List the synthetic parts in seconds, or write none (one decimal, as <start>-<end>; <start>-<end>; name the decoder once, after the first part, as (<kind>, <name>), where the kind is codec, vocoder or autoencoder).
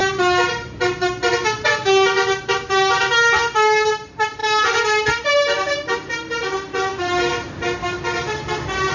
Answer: none